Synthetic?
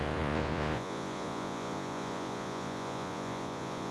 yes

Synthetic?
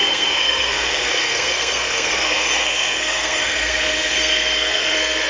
yes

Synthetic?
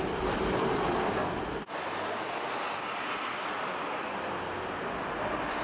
no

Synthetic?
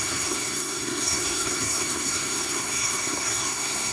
yes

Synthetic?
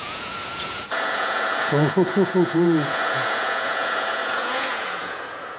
yes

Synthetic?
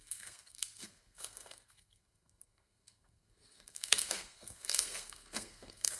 yes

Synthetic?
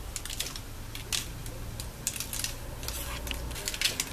no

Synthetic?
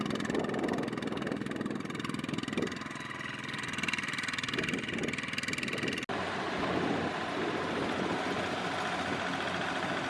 no